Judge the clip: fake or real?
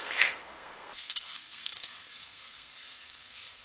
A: fake